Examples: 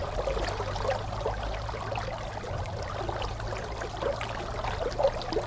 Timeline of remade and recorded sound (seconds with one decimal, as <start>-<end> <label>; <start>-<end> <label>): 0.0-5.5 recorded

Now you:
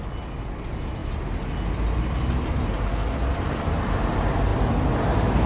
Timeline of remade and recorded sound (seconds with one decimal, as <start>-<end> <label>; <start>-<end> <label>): 0.0-5.5 recorded

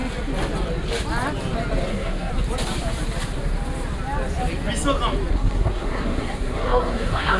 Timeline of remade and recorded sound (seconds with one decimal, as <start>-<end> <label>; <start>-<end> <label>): 0.0-1.9 recorded; 1.9-2.3 remade; 2.3-5.3 recorded; 5.3-7.4 remade

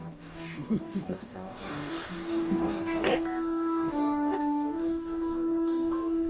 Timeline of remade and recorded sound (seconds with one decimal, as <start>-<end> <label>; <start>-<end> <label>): 0.0-6.3 remade

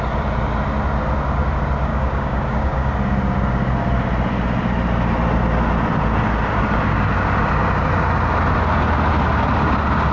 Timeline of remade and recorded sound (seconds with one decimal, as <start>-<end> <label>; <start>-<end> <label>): 0.0-1.9 recorded; 1.9-2.9 remade; 2.9-10.1 recorded

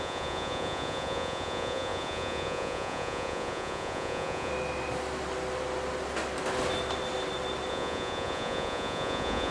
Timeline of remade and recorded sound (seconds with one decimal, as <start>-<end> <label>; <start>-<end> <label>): 0.0-4.5 remade; 4.5-7.7 recorded; 7.7-9.5 remade